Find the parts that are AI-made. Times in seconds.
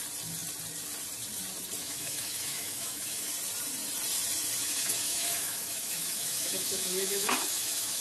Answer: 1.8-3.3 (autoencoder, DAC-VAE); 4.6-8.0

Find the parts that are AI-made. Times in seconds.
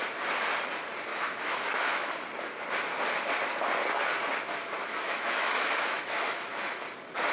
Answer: 1.1-2.1 (autoencoder, DAC-VAE); 4.8-6.8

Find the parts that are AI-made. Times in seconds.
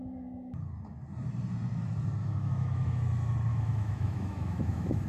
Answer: 2.2-3.0 (autoencoder, DAC-VAE); 3.5-5.1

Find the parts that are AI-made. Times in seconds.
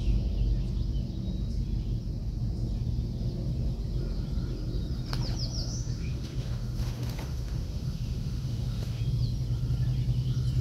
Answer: 5.6-9.0 (autoencoder, DAC-VAE)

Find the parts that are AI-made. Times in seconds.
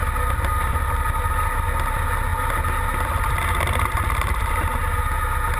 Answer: none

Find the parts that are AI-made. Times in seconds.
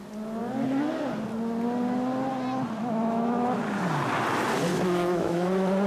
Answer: 2.8-3.6 (autoencoder, DAC-VAE); 4.7-5.5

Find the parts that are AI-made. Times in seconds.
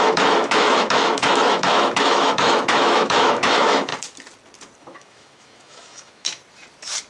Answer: 0.0-3.9 (autoencoder, DAC-VAE); 4.8-6.4